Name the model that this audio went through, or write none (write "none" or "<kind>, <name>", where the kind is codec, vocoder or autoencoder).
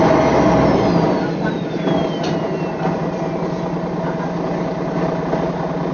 none